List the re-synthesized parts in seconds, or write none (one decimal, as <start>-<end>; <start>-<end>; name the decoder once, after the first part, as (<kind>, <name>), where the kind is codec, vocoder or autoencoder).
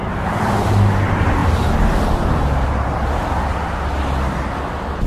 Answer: none